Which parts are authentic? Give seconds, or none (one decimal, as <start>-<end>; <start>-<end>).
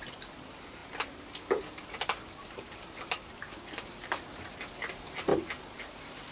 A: 0.0-6.3